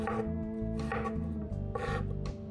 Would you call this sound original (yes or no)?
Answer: yes